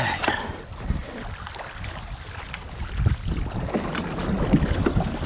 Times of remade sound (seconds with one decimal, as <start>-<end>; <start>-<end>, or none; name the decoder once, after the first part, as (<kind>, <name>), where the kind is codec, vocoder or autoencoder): none